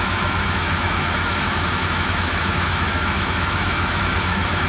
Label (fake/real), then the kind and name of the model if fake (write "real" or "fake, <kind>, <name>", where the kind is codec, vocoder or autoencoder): fake, autoencoder, DAC-VAE